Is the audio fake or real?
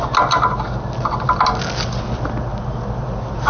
real